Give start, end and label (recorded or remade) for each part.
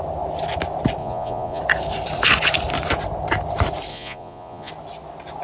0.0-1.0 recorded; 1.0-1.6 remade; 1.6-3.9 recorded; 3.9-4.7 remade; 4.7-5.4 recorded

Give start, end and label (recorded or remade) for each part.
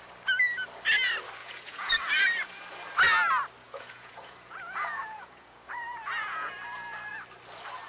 0.0-1.4 recorded; 1.4-2.6 remade; 2.6-3.6 recorded; 3.6-6.5 remade; 6.5-7.9 recorded